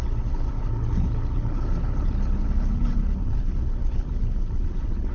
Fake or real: fake